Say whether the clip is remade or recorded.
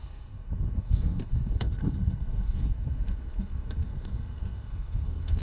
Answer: remade